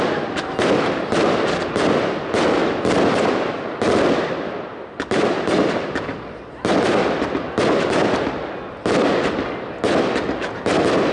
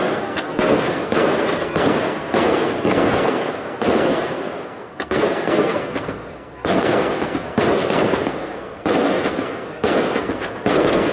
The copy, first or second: second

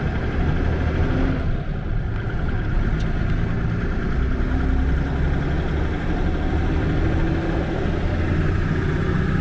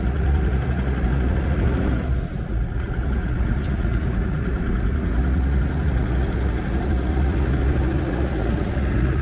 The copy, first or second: second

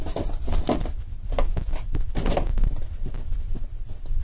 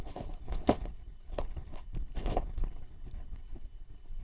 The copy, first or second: second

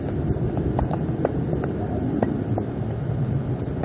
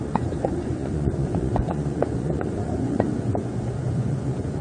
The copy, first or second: second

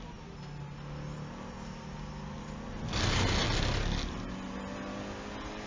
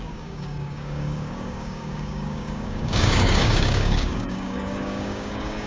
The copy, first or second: second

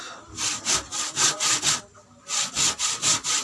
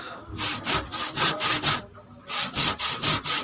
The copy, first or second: second